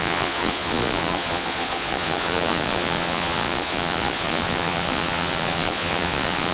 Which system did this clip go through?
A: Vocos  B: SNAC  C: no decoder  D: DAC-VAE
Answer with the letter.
A